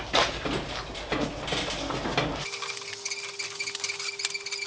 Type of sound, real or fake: real